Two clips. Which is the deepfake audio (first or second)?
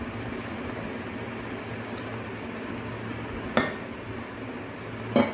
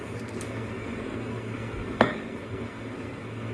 second